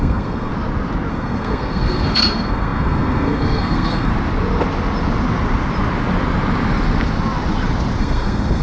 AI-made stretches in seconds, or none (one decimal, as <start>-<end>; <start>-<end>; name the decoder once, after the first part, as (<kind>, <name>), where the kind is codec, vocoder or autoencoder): 0.0-0.5 (codec, SNAC); 1.1-4.1; 8.0-8.6

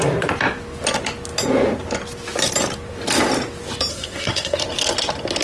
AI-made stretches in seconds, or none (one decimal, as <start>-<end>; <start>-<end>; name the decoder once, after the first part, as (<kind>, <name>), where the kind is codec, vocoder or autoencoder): 3.9-4.6 (codec, SNAC)

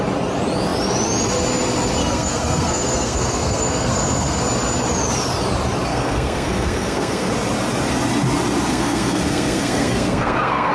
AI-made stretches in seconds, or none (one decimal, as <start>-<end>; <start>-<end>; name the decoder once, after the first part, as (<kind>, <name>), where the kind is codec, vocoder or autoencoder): 2.0-4.4 (codec, SNAC); 5.9-7.3; 8.7-10.7

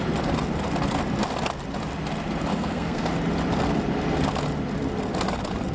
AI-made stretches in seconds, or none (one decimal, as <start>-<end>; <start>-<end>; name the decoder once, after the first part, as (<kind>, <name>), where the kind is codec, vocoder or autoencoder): 2.5-3.1 (codec, SNAC)